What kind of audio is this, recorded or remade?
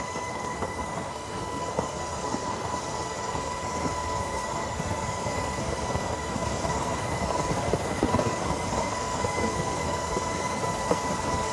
remade